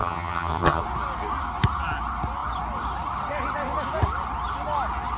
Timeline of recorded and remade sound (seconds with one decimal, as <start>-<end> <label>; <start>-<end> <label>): 0.0-0.8 remade; 0.8-5.2 recorded